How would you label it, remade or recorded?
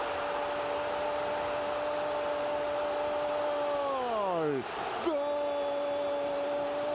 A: recorded